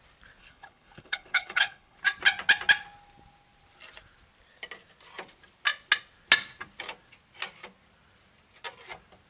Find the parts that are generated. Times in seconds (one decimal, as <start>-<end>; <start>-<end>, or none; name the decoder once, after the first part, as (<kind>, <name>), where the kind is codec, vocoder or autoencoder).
0.4-2.0 (codec, HILCodec)